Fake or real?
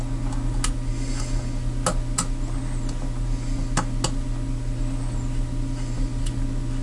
real